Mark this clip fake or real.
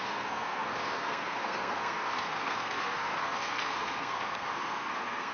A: fake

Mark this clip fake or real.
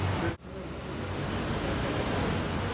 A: real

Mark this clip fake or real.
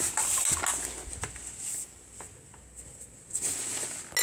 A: real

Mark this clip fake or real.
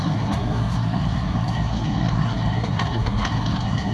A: fake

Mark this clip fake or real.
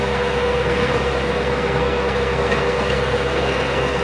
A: fake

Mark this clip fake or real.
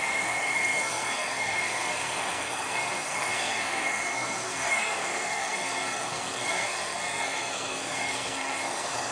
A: fake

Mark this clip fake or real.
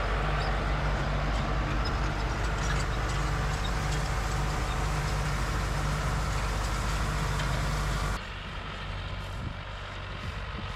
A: real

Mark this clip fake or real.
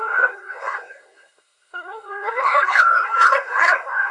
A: fake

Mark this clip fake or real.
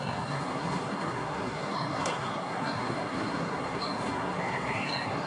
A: fake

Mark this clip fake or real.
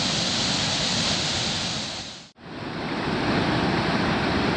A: real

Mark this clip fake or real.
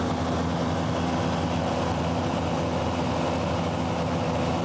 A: real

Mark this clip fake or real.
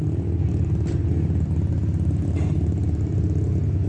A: real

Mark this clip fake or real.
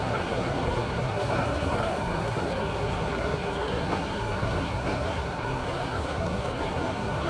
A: fake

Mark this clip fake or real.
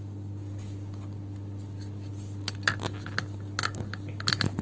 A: real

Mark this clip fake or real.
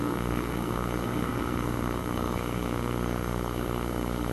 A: fake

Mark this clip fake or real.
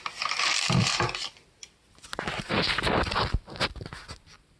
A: real